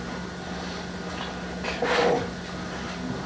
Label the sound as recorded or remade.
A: recorded